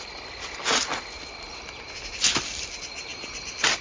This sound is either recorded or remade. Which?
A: recorded